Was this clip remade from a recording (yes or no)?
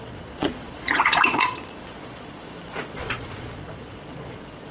yes